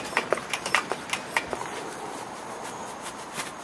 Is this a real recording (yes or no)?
no